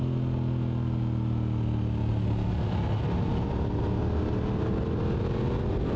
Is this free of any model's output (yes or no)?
yes